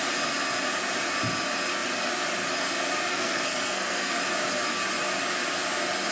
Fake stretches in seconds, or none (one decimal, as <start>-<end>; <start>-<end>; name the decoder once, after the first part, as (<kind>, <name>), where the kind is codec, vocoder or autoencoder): 3.1-4.2 (codec, SNAC)